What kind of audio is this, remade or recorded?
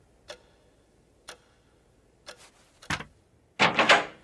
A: recorded